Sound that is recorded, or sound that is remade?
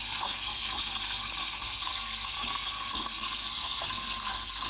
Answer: remade